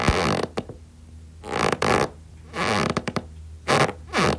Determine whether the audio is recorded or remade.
recorded